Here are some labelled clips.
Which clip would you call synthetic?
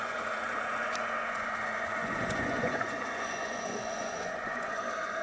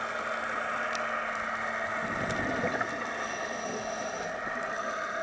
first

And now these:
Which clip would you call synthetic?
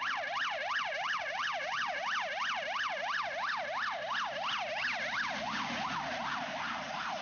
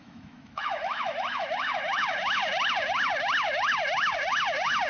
second